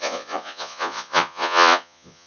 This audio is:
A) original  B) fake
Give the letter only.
B